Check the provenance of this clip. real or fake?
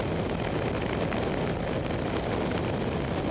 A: real